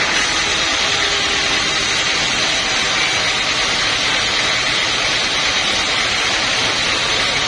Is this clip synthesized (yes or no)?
no